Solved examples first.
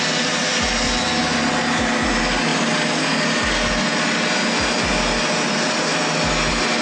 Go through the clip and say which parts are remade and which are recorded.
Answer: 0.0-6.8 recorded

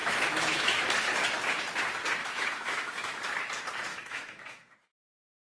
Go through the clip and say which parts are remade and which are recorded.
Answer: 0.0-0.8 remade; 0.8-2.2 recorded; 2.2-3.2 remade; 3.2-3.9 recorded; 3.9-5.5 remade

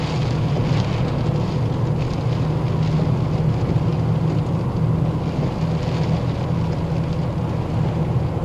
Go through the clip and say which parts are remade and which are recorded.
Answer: 0.0-8.4 recorded

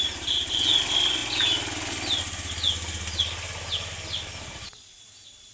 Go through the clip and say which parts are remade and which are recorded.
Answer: 0.0-4.5 recorded; 4.5-5.5 remade

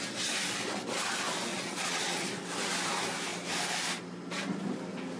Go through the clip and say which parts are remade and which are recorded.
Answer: 0.0-1.5 recorded; 1.5-2.3 remade; 2.3-5.2 recorded